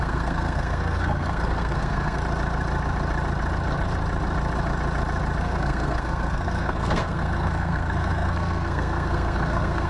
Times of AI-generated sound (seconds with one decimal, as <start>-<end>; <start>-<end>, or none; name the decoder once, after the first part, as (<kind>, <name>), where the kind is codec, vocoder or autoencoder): 0.0-2.2 (codec, SNAC); 5.4-9.9